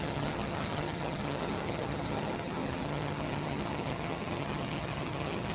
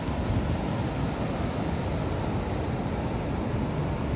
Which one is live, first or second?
second